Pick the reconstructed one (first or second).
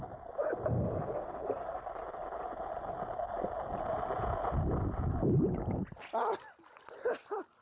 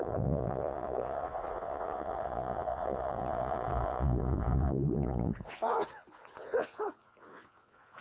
second